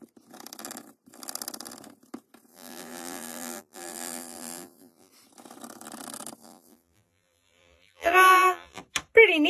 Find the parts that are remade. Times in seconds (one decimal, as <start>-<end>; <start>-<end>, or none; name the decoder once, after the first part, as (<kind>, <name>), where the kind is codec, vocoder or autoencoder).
2.5-5.1 (vocoder, BigVGAN v2); 6.4-8.8